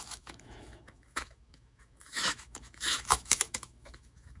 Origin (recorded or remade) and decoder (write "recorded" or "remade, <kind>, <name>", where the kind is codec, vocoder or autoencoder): remade, autoencoder, DAC-VAE